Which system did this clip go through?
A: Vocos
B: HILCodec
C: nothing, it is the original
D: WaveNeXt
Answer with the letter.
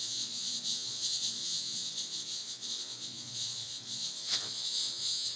A